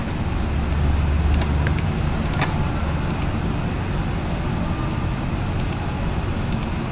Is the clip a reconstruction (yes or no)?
no